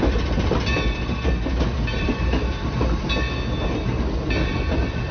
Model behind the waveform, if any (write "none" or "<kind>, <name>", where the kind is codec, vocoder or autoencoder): none